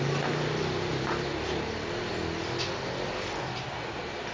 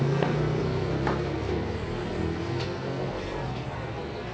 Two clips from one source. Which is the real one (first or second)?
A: first